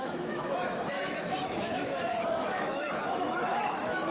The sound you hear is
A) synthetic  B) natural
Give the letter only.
A